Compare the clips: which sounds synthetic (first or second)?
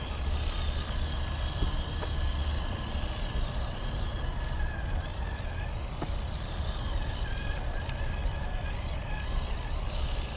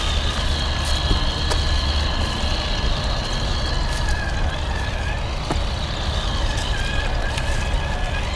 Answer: first